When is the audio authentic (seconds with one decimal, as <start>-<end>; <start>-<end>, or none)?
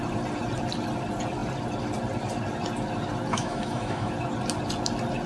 0.0-3.3; 4.1-5.3